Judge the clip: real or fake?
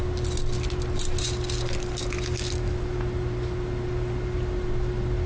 real